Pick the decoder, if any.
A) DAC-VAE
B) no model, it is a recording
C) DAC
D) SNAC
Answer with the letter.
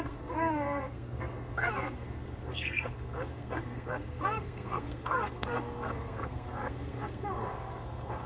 D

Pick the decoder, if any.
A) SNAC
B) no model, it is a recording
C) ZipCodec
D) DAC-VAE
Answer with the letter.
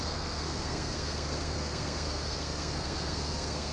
A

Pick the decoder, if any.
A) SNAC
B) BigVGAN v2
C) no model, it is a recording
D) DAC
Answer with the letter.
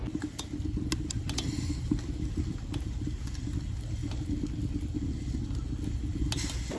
C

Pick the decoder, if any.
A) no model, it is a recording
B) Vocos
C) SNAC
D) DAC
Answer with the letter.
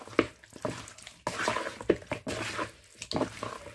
A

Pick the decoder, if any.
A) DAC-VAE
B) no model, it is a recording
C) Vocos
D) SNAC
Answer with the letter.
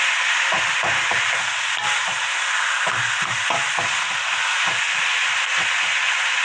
B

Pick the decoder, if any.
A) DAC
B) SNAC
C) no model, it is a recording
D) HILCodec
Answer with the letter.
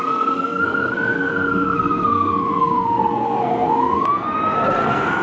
B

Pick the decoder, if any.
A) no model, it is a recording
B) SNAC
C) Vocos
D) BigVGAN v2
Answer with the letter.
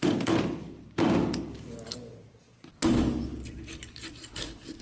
A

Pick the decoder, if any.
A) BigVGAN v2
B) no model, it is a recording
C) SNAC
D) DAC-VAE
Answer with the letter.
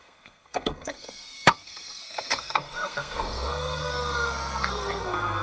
C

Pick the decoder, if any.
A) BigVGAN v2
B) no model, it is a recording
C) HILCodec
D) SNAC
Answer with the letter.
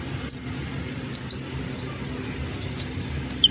B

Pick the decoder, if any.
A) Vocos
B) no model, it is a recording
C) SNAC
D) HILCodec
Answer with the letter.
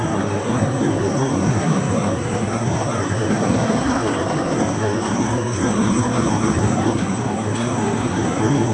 C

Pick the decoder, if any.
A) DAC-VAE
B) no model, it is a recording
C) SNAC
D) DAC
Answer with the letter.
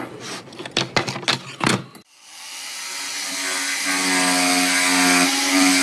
B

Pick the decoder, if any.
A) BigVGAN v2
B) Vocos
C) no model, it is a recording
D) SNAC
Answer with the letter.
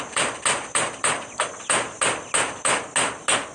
C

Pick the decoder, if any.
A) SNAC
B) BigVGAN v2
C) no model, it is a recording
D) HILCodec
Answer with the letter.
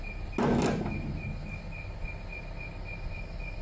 C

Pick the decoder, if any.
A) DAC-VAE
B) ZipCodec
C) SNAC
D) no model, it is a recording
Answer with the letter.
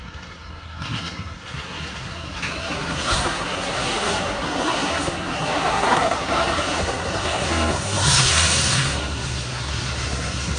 C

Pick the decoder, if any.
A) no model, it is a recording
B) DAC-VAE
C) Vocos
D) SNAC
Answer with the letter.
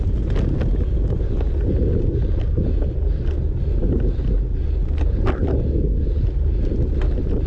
A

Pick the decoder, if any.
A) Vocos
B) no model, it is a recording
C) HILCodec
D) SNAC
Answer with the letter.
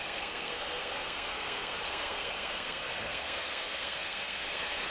D